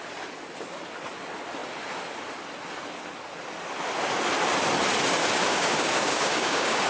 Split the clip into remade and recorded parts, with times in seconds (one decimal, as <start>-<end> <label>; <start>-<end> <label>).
0.0-5.5 recorded; 5.5-6.9 remade